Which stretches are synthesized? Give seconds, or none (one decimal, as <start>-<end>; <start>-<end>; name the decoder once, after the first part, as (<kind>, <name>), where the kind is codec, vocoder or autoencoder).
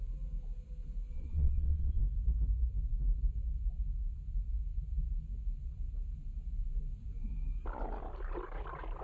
1.1-2.0 (vocoder, WaveNeXt)